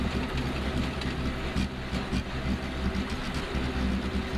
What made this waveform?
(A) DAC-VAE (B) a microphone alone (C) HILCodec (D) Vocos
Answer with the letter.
B